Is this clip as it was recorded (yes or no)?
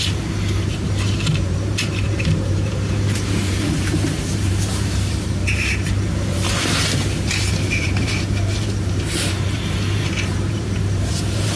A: no